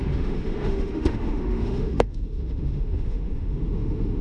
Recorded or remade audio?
remade